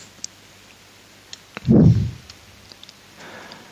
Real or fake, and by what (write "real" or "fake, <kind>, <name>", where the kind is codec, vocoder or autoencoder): fake, vocoder, BigVGAN v2